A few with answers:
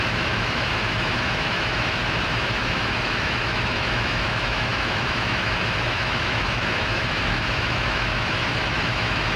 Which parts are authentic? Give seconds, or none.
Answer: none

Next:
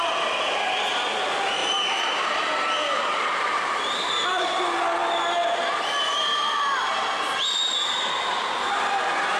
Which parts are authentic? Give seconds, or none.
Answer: 0.0-1.6; 4.1-9.4